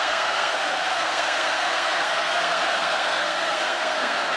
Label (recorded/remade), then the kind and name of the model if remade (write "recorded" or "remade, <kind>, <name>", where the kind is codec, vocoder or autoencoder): remade, codec, SNAC